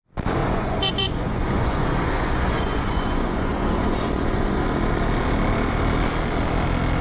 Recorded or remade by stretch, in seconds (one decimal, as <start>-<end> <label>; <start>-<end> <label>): 0.0-0.4 recorded; 0.4-4.6 remade; 4.6-7.0 recorded